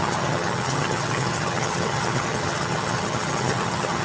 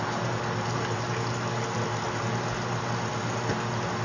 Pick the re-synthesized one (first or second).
first